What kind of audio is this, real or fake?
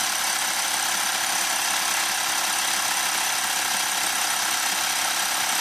real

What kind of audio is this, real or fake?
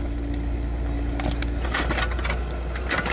real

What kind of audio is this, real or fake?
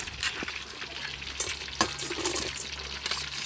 real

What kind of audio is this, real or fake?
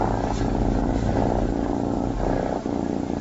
real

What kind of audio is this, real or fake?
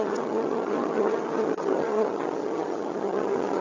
fake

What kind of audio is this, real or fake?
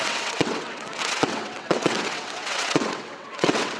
fake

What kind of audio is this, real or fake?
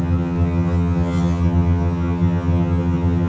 fake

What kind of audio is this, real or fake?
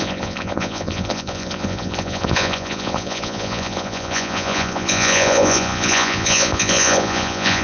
fake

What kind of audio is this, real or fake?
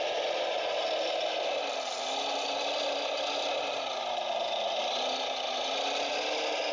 real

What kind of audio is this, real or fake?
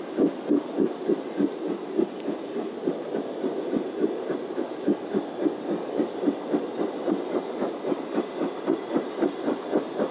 real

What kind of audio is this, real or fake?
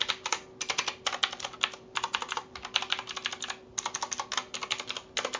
real